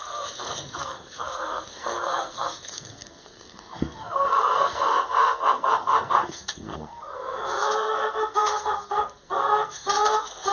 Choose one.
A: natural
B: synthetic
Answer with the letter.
B